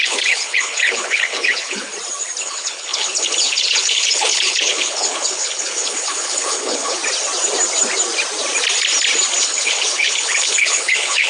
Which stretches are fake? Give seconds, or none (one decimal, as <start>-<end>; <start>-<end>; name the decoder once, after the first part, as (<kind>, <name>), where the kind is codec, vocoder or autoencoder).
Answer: 0.0-1.9 (codec, HILCodec); 2.4-7.0; 9.4-11.3